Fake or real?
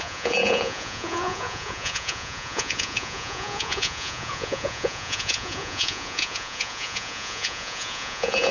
fake